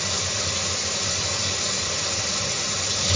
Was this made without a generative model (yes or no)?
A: yes